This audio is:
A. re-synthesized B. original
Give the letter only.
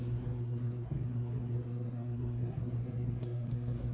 A